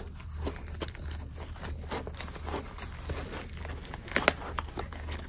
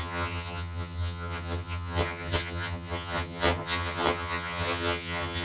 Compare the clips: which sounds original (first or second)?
first